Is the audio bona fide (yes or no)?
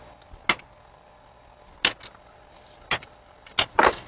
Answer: yes